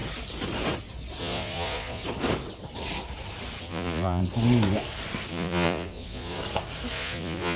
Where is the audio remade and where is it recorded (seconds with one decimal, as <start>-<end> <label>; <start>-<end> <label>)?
0.0-1.2 recorded; 1.2-2.0 remade; 2.0-3.6 recorded; 3.6-4.2 remade; 4.2-5.3 recorded; 5.3-6.4 remade; 6.4-6.9 recorded; 6.9-7.6 remade